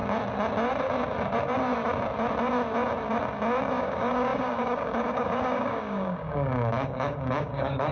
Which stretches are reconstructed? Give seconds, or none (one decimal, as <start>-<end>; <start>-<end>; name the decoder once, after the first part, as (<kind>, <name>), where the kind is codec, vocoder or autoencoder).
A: 3.8-7.9 (codec, DAC)